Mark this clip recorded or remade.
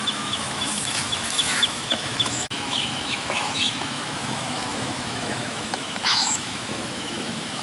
remade